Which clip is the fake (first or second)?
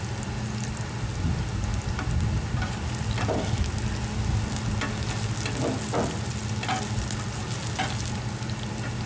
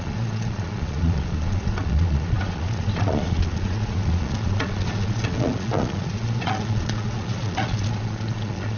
second